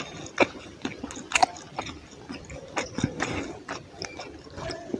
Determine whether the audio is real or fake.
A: real